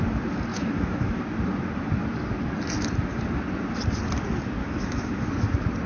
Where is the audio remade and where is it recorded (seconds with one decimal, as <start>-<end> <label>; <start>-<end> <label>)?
0.0-0.5 recorded; 0.5-1.2 remade; 1.2-4.6 recorded; 4.6-5.3 remade; 5.3-5.9 recorded